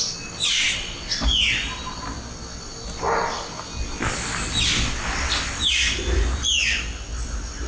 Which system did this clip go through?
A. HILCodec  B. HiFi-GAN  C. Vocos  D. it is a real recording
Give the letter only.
D